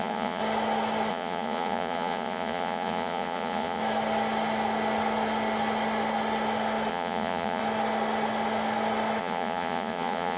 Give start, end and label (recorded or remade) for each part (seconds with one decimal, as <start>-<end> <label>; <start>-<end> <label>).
0.0-0.4 remade; 0.4-1.1 recorded; 1.1-3.8 remade; 3.8-6.9 recorded; 6.9-7.6 remade; 7.6-9.2 recorded; 9.2-10.4 remade

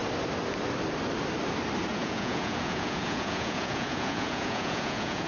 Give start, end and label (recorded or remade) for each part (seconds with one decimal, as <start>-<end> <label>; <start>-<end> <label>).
0.0-1.9 recorded; 1.9-5.3 remade